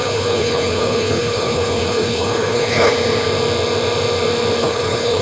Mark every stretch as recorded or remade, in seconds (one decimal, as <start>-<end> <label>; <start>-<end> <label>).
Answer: 0.0-2.9 remade; 2.9-4.6 recorded; 4.6-5.2 remade